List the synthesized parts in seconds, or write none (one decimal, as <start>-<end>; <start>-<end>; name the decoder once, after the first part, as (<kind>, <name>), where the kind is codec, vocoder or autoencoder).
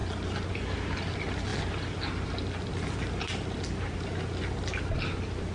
none